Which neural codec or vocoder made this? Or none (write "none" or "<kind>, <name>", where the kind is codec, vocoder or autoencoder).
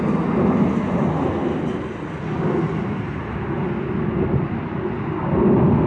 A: none